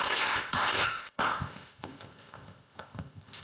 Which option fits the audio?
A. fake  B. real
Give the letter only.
A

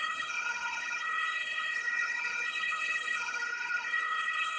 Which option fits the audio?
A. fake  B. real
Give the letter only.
A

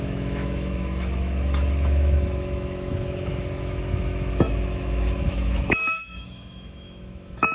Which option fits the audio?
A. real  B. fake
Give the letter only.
B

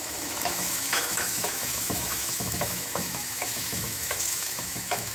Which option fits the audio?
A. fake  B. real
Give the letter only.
A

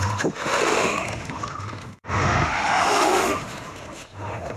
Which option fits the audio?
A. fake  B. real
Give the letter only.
A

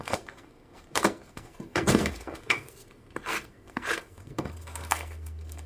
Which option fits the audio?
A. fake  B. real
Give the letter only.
A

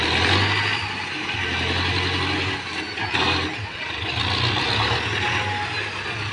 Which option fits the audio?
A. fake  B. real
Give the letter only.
B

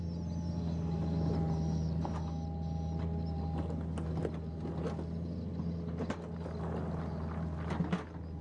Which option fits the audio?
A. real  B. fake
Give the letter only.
A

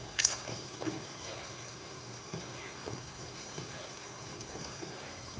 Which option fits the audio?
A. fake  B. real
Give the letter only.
A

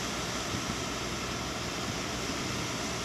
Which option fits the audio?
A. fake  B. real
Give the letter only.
B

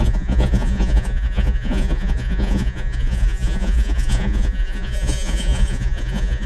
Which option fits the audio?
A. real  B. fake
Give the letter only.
B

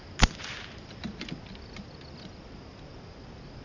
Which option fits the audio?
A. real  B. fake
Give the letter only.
A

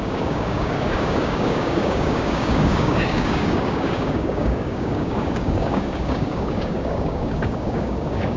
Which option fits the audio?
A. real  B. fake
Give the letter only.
B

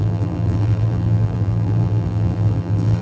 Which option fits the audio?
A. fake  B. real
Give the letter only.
A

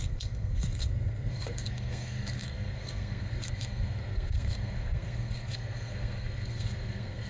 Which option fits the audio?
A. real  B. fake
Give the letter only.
B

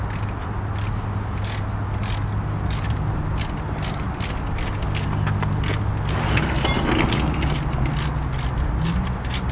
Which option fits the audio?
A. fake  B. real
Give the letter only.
B